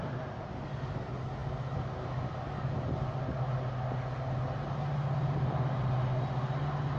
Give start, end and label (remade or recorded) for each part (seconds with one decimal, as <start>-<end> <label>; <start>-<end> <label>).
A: 0.0-7.0 recorded